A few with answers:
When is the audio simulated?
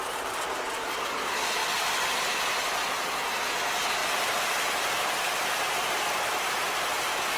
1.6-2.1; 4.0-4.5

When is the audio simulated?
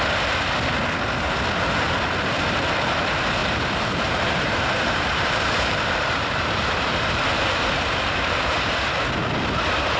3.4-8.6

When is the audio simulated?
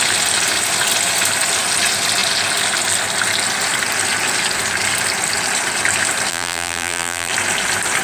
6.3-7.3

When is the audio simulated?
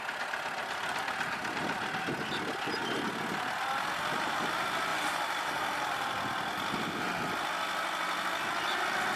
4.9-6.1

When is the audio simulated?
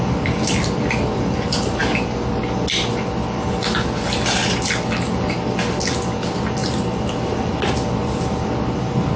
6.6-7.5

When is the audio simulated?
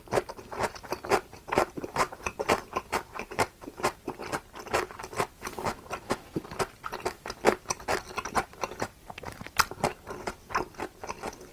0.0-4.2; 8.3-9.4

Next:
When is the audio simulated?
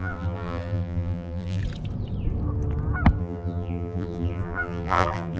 0.0-1.6; 3.2-5.4